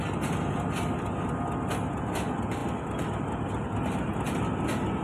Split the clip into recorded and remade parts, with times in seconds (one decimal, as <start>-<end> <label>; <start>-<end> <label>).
0.0-5.0 recorded